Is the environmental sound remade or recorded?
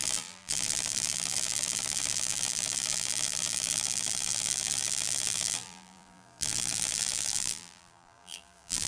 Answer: remade